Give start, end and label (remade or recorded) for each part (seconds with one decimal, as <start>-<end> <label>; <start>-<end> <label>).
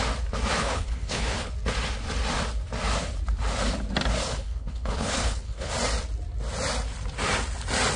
0.0-0.6 recorded; 0.6-1.5 remade; 1.5-4.3 recorded; 4.3-5.7 remade; 5.7-8.0 recorded